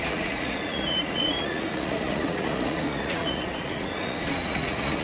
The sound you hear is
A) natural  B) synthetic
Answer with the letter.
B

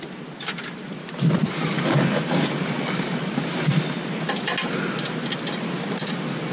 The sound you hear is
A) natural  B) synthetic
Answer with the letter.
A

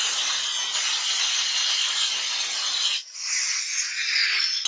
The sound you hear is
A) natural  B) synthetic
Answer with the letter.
A